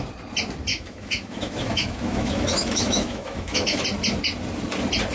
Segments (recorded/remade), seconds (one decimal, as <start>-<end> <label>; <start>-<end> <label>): 0.0-0.7 recorded; 0.7-3.8 remade; 3.8-5.1 recorded